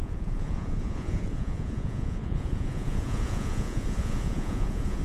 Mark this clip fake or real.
fake